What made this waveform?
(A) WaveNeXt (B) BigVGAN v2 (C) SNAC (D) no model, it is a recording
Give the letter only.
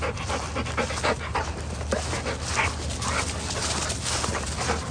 D